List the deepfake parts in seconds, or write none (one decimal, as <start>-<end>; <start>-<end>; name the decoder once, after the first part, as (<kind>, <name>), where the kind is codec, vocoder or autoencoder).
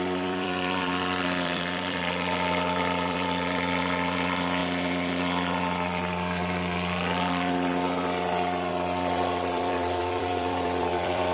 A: 0.0-4.6 (vocoder, BigVGAN v2); 8.7-11.3